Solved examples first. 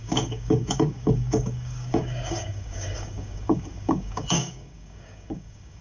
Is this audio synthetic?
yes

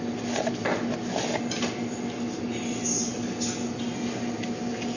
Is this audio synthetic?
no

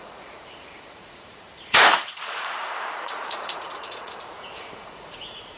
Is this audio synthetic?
yes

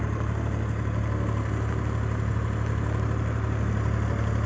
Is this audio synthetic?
no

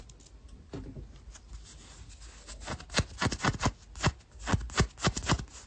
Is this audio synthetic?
no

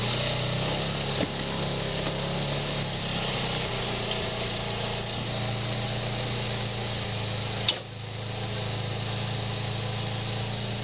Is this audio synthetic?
no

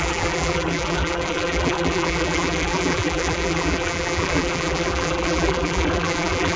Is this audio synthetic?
yes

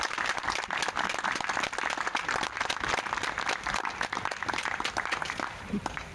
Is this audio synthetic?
no